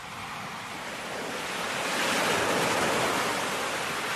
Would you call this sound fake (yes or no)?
no